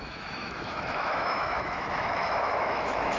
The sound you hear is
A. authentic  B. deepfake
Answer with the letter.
B